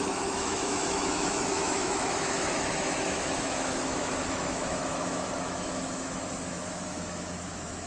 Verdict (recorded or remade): remade